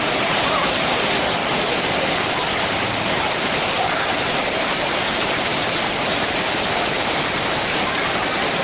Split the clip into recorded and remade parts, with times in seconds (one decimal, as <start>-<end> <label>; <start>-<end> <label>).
0.0-1.4 remade; 1.4-2.6 recorded; 2.6-8.6 remade